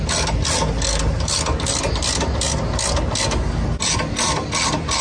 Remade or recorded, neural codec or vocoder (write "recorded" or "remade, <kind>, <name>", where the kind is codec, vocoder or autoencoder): recorded